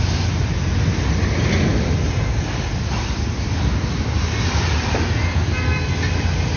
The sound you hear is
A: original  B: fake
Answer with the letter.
A